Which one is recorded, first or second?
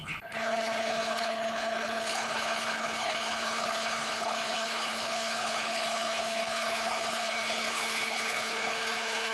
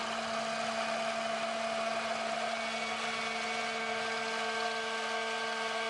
second